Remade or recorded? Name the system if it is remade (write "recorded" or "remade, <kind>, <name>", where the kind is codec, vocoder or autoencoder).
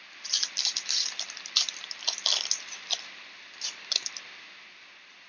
remade, vocoder, BigVGAN v2